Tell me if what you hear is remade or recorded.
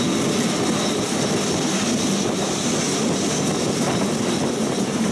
recorded